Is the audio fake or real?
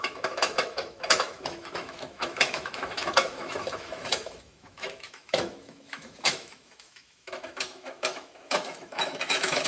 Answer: fake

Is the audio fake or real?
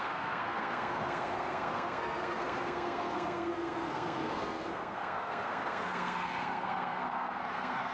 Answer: fake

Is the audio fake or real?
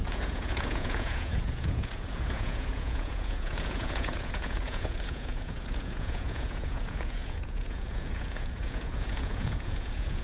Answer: fake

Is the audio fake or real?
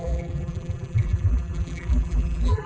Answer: fake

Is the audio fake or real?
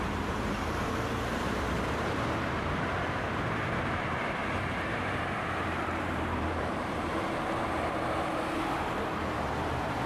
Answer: fake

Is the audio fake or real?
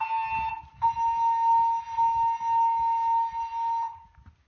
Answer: real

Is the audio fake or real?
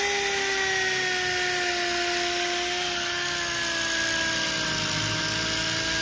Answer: real